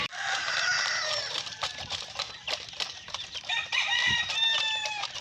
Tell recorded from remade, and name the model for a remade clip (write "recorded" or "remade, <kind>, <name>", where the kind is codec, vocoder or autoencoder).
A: remade, vocoder, BigVGAN v2